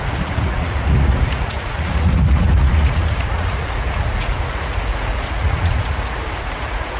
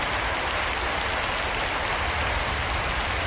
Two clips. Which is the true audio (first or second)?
second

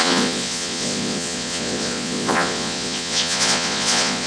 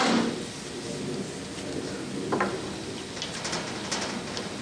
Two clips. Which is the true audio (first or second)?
second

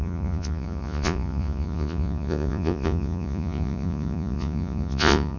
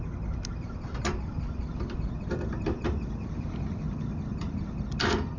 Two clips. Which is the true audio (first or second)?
second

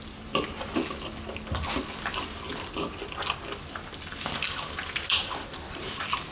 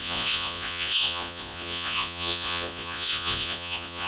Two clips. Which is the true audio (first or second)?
first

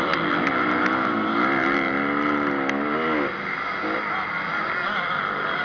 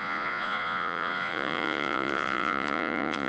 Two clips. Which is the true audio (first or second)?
first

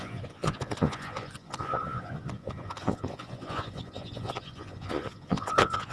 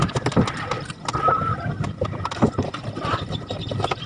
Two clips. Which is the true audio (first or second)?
second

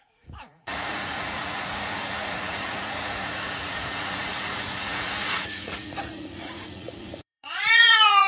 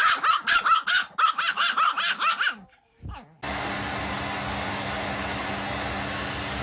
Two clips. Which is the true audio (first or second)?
second